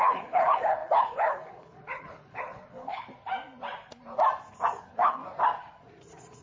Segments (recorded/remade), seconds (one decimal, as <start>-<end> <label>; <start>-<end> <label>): 0.0-3.1 remade; 3.1-4.8 recorded; 4.8-5.2 remade; 5.2-6.4 recorded